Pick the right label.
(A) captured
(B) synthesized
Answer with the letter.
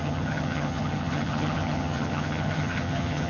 B